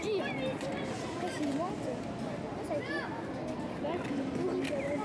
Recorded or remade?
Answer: recorded